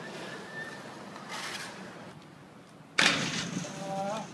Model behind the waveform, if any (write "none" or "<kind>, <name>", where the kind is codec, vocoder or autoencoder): none